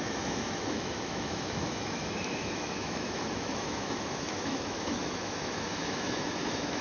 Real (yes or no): no